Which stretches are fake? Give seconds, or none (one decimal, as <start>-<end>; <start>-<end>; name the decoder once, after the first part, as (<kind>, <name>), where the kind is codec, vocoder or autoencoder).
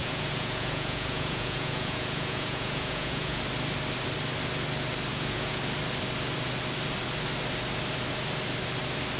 0.0-3.4 (vocoder, Vocos); 5.1-5.6